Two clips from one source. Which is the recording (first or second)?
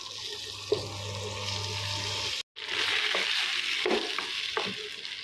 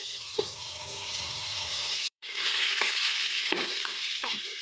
first